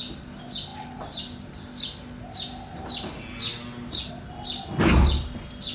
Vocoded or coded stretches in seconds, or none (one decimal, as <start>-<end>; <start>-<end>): none